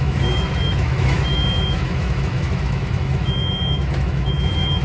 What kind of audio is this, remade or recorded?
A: remade